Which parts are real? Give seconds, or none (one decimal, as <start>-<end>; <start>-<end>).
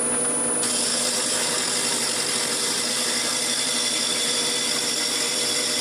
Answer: 0.0-5.8